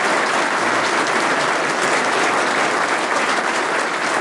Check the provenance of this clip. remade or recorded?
recorded